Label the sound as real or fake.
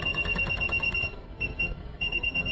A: fake